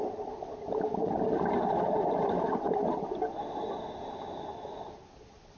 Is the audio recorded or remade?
recorded